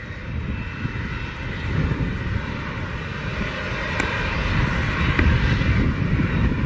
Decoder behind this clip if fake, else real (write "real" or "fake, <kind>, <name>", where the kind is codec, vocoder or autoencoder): real